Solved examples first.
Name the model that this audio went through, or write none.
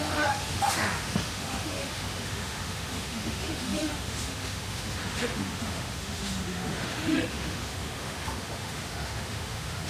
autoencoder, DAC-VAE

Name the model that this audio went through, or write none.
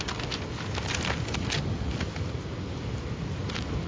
none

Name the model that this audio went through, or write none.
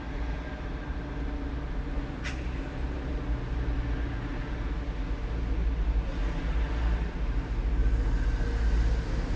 none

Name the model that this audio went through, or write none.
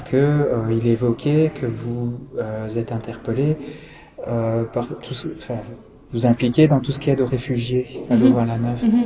none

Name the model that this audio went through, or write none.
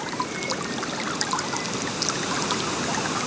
none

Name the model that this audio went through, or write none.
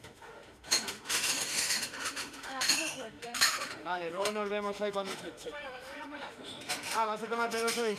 autoencoder, DAC-VAE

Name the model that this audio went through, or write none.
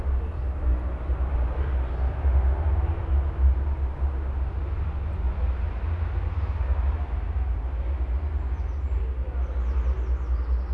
none